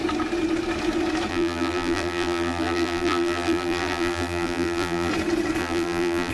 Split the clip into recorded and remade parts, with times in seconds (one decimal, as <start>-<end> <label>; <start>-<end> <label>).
0.0-1.3 recorded; 1.3-5.1 remade; 5.1-5.6 recorded; 5.6-6.3 remade